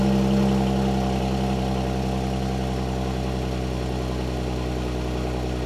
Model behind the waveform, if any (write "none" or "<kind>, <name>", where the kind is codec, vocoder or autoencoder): none